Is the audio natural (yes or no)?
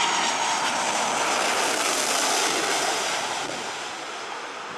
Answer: yes